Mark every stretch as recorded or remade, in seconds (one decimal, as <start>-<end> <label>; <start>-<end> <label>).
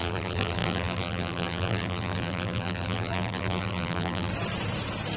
0.0-4.3 remade; 4.3-5.2 recorded